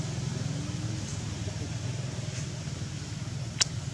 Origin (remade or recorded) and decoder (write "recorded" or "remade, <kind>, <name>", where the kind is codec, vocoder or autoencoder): recorded